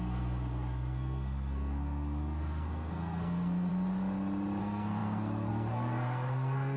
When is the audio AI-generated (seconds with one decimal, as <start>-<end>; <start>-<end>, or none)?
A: 0.0-3.7; 4.6-6.8